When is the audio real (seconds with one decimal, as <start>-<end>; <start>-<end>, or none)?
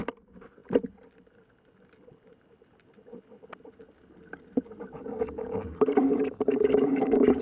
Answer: 0.0-5.0